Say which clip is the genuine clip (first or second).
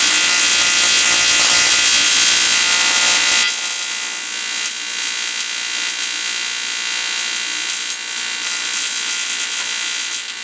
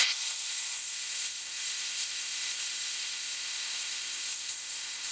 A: first